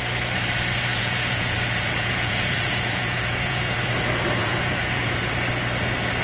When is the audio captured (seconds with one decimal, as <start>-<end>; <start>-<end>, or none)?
0.0-0.9; 3.9-4.4; 5.3-6.2